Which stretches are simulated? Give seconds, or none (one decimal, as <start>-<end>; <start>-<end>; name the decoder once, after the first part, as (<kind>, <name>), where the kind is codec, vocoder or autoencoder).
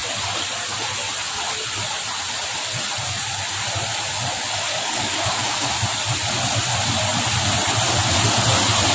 4.7-5.7 (codec, DAC)